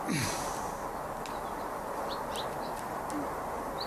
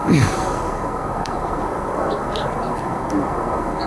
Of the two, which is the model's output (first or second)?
second